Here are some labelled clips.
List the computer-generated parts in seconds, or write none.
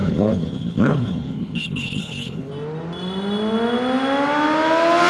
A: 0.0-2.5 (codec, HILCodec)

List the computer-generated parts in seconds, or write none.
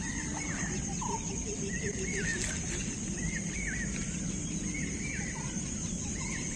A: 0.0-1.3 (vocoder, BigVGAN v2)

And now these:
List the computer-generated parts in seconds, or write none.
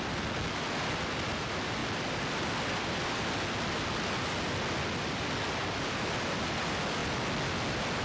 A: none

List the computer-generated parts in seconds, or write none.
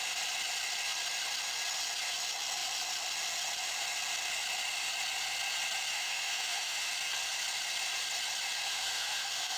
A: 5.9-6.9 (autoencoder, DAC-VAE); 8.7-9.6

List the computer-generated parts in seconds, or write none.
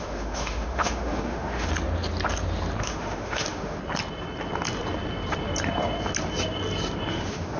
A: 0.0-1.7 (autoencoder, DAC-VAE); 2.8-3.8; 7.1-7.6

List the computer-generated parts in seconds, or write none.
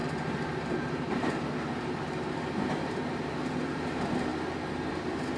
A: 0.0-4.3 (vocoder, BigVGAN v2); 4.9-5.4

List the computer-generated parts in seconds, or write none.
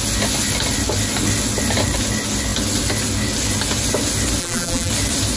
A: 4.4-4.9 (vocoder, BigVGAN v2)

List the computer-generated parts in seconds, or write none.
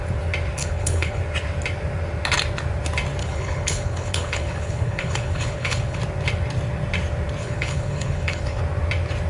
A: 0.6-1.2 (codec, HILCodec); 3.2-6.0; 7.4-8.6